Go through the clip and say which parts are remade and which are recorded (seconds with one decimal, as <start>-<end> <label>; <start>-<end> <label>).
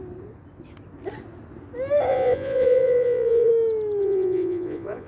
0.0-2.1 recorded; 2.1-3.5 remade; 3.5-4.0 recorded; 4.0-5.1 remade